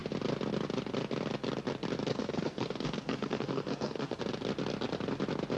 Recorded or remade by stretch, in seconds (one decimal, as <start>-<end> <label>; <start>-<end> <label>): 0.0-2.1 recorded; 2.1-4.2 remade; 4.2-5.6 recorded